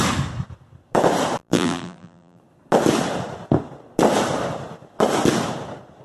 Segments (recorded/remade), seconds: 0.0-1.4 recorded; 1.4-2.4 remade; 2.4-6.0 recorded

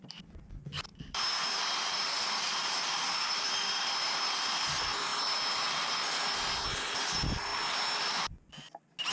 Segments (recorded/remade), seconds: 0.0-0.9 recorded; 0.9-3.5 remade; 3.5-9.1 recorded

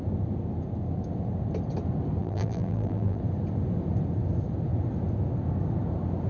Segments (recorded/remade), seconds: 0.0-2.2 recorded; 2.2-3.2 remade; 3.2-6.3 recorded

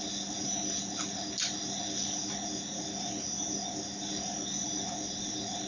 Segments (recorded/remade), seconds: 0.0-5.7 recorded

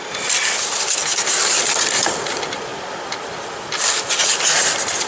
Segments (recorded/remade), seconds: 0.0-5.1 recorded